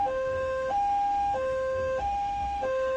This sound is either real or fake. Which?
fake